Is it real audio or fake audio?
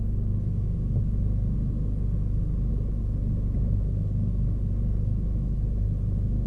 real